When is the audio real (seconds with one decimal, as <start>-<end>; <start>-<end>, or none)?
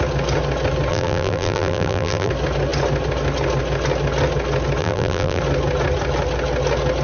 0.0-0.9; 2.3-4.8; 5.4-7.0